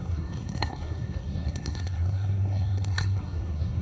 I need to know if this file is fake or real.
fake